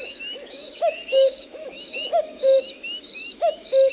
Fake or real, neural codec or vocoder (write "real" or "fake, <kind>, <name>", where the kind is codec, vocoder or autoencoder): fake, autoencoder, DAC-VAE